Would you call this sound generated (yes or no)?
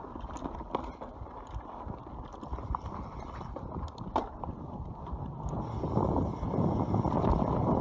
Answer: no